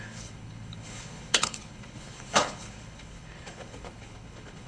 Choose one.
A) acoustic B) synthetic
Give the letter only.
B